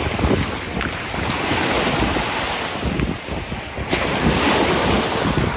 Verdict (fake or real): real